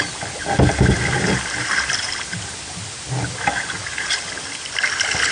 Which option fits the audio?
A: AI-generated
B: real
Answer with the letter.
B